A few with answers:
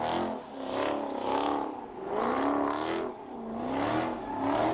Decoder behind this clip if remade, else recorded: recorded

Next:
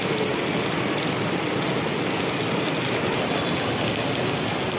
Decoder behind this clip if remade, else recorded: recorded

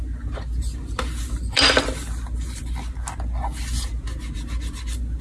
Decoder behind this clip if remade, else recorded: recorded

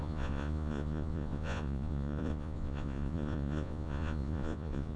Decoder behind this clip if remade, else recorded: remade, vocoder, Vocos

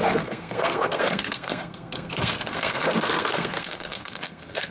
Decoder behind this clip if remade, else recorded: remade, codec, SNAC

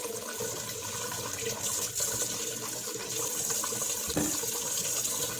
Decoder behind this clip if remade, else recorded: recorded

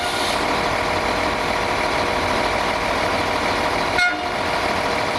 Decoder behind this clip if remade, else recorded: recorded